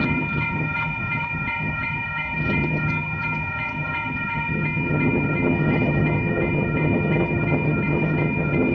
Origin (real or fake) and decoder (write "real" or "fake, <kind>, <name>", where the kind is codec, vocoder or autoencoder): fake, vocoder, HiFi-GAN